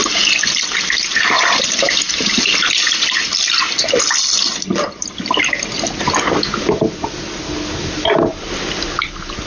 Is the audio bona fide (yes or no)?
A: yes